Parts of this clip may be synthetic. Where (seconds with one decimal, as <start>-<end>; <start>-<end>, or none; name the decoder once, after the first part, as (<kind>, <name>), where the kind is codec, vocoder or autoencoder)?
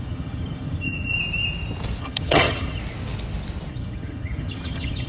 0.0-1.1 (vocoder, HiFi-GAN); 2.0-2.8; 3.7-5.1